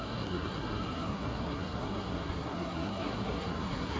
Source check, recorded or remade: remade